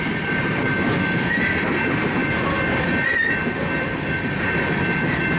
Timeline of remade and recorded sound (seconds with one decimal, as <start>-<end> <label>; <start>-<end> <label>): 0.0-2.2 recorded; 2.2-2.9 remade; 2.9-5.4 recorded